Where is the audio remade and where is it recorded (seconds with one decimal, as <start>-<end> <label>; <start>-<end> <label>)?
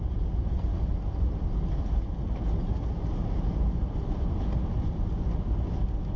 0.0-6.2 recorded